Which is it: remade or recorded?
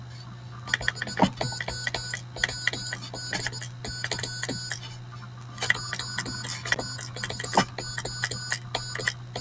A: recorded